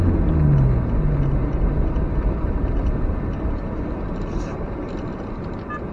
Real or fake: real